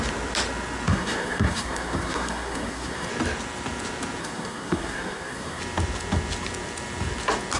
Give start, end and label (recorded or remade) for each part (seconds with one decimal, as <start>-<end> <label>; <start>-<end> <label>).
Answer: 0.0-0.9 recorded; 0.9-3.1 remade; 3.1-4.2 recorded; 4.2-5.6 remade; 5.6-7.6 recorded

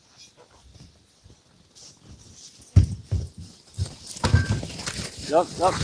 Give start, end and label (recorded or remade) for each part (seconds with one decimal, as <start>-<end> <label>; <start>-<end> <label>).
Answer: 0.0-5.8 recorded